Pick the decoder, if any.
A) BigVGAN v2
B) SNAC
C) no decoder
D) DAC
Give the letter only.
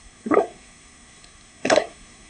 B